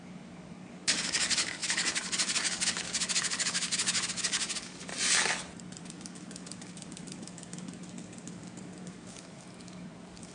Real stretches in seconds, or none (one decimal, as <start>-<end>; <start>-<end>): 4.9-5.8